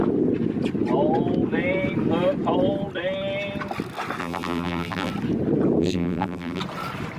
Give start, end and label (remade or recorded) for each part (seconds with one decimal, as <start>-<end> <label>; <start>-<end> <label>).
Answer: 0.0-4.2 recorded; 4.2-5.1 remade; 5.1-5.8 recorded; 5.8-6.6 remade; 6.6-7.2 recorded